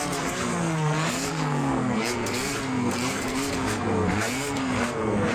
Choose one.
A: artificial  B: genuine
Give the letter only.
A